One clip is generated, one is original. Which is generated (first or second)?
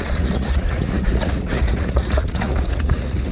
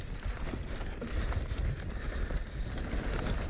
first